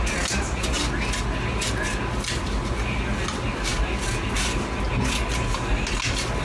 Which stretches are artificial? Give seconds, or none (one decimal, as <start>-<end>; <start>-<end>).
none